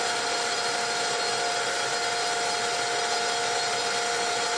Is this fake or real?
real